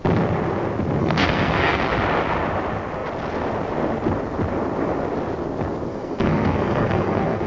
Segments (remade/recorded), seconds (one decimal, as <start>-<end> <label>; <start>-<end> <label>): 0.0-1.0 recorded; 1.0-1.8 remade; 1.8-5.9 recorded; 5.9-7.5 remade